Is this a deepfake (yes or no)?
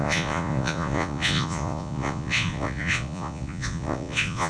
yes